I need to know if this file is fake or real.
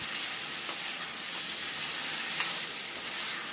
real